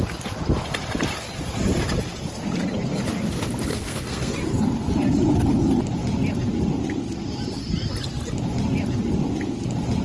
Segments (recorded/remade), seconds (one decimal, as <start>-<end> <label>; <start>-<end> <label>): 0.0-3.7 recorded; 3.7-4.3 remade; 4.3-10.0 recorded

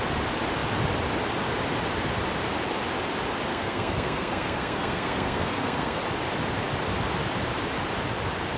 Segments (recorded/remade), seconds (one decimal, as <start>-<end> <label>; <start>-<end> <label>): 0.0-3.5 recorded; 3.5-6.0 remade; 6.0-8.6 recorded

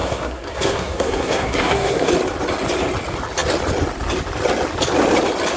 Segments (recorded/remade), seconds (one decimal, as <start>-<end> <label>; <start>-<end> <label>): 0.0-2.1 remade; 2.1-5.6 recorded

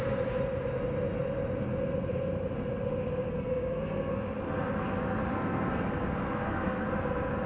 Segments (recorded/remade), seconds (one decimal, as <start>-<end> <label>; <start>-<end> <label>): 0.0-3.3 recorded; 3.3-4.2 remade; 4.2-5.3 recorded; 5.3-6.9 remade; 6.9-7.5 recorded